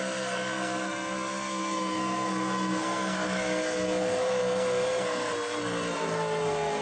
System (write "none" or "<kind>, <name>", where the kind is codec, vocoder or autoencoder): codec, SNAC